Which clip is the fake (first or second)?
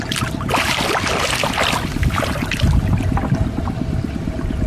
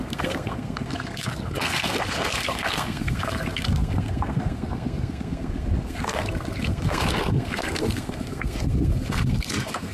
second